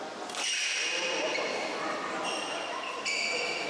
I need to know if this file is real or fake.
real